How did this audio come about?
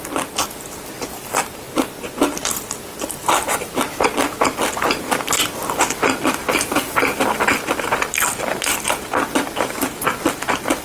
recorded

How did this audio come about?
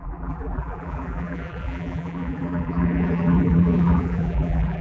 remade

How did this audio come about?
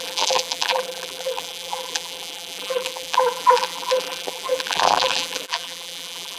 remade